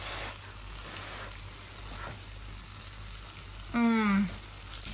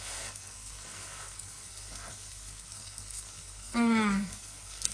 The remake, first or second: second